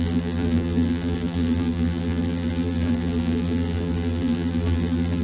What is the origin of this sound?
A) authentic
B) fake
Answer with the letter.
B